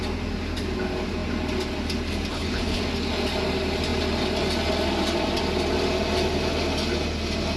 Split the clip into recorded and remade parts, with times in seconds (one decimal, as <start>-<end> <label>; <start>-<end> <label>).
0.0-2.3 recorded; 2.3-2.8 remade; 2.8-7.6 recorded